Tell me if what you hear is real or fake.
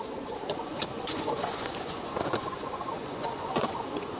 fake